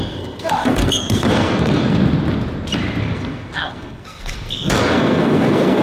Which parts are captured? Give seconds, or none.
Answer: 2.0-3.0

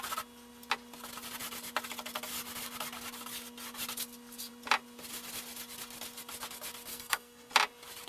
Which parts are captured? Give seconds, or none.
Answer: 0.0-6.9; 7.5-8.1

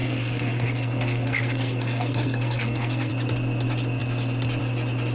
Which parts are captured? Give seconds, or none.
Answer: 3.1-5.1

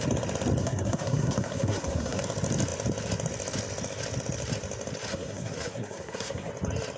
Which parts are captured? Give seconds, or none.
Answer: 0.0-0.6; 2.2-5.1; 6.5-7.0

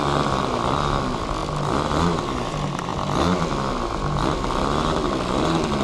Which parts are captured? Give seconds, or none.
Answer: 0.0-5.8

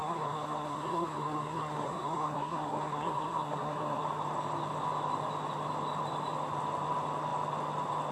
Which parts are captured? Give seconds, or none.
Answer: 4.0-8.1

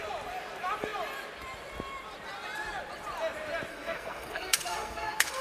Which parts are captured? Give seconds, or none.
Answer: 0.0-3.7